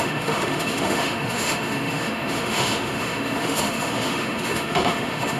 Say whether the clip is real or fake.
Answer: fake